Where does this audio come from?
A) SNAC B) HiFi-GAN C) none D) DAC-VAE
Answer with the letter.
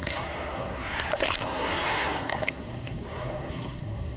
A